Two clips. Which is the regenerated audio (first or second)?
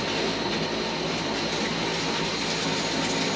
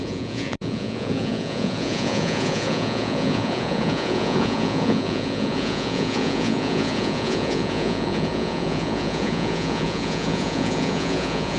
second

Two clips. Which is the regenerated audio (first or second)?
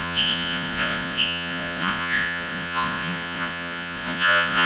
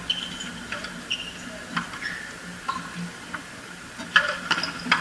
first